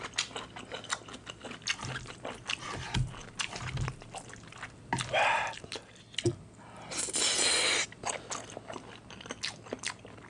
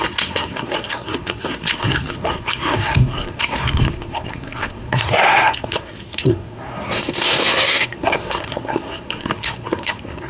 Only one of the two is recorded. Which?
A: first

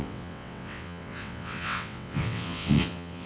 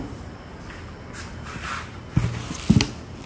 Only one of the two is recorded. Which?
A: second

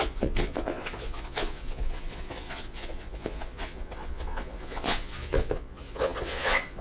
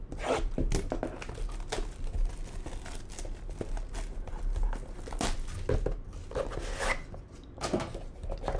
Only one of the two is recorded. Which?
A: second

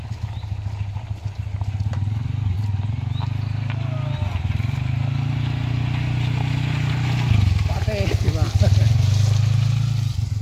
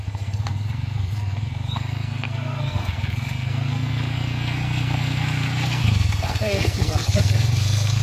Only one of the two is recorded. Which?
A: first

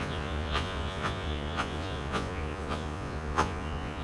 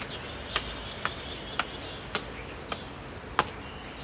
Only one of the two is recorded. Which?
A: second